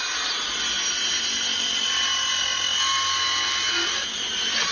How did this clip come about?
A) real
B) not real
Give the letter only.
A